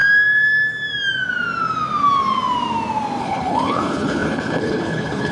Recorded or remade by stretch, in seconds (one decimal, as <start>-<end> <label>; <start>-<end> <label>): 0.0-3.2 recorded; 3.2-5.3 remade